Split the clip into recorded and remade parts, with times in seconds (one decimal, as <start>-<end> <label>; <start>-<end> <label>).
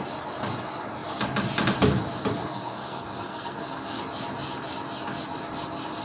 0.0-2.4 recorded; 2.4-4.0 remade; 4.0-6.0 recorded